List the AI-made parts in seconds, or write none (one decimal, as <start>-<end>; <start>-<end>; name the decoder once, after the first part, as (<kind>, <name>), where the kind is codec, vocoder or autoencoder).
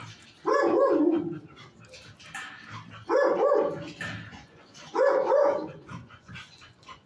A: 4.3-7.1 (vocoder, Vocos)